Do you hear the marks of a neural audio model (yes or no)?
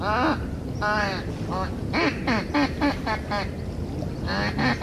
no